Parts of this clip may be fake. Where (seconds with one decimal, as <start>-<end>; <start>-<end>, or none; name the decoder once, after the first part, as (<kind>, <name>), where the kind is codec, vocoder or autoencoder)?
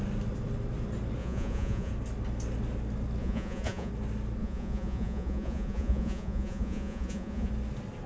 1.2-1.9 (vocoder, Vocos); 3.2-3.9; 4.4-7.5